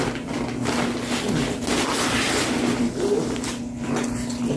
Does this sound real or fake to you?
real